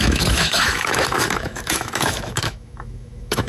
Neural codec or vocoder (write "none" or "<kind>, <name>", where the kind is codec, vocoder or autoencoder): autoencoder, DAC-VAE